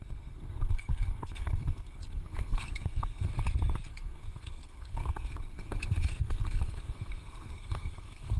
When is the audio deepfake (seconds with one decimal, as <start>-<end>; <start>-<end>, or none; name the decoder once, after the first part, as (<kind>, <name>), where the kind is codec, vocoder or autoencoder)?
0.0-3.3 (codec, SNAC); 3.9-8.4